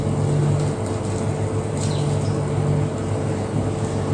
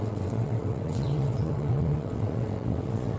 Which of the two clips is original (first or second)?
first